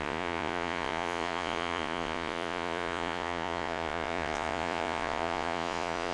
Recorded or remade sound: remade